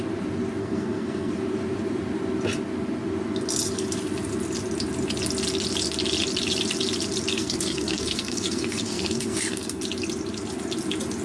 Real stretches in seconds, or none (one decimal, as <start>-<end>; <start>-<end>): 0.0-0.6; 1.3-7.3; 9.8-11.2

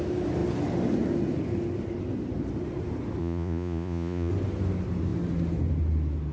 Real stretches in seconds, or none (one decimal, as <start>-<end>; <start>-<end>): 0.0-3.2; 4.3-6.3

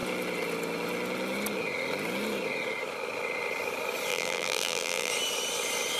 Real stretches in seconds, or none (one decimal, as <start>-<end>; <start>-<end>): 0.0-4.1; 5.1-6.0

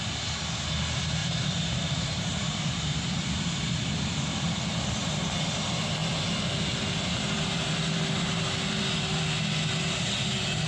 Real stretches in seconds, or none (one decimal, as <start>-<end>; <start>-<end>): 0.0-1.2; 3.4-10.7

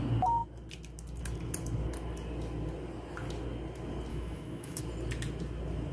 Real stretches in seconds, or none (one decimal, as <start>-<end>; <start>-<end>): 0.0-4.1; 4.8-5.9

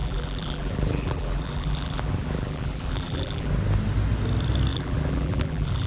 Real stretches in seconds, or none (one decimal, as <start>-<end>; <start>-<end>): 3.5-4.7